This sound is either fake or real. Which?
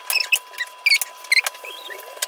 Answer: real